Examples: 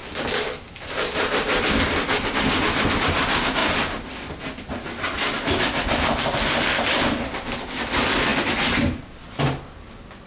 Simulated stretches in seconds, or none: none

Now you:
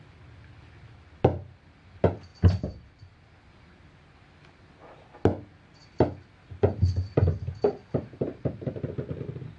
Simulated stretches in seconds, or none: none